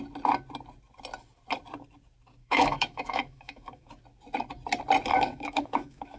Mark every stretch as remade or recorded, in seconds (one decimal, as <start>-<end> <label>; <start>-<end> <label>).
0.0-2.4 recorded; 2.4-3.9 remade; 3.9-5.1 recorded; 5.1-6.2 remade